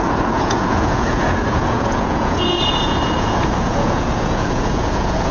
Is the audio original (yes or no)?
no